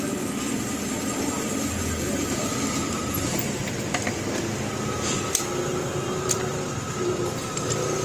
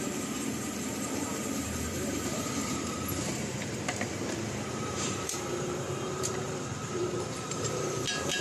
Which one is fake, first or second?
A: second